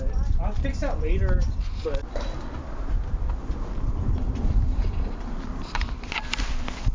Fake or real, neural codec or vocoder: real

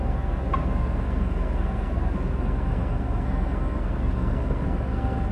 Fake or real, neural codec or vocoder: fake, codec, SNAC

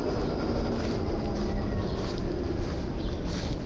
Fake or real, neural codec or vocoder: real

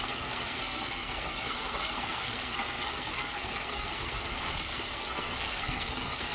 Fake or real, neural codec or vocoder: fake, codec, SNAC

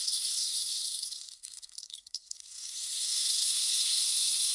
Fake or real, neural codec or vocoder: fake, codec, SNAC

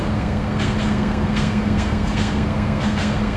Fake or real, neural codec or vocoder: fake, codec, SNAC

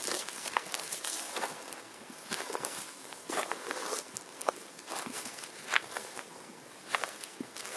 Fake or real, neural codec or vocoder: fake, codec, SNAC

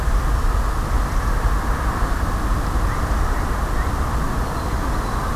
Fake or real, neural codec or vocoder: real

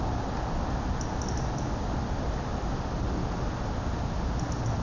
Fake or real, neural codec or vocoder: real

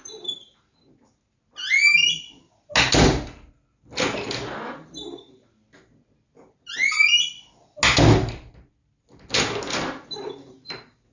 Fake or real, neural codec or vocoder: real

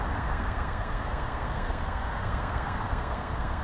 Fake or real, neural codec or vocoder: fake, codec, SNAC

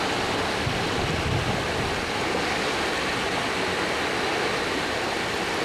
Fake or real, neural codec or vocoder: real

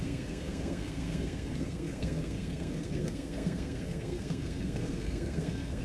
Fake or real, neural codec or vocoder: fake, codec, SNAC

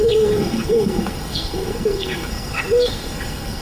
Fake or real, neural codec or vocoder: fake, codec, SNAC